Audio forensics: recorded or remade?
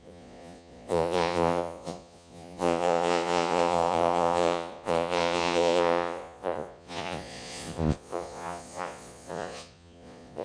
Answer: remade